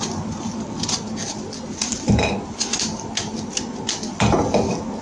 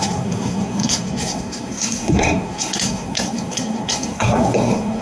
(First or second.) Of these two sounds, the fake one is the second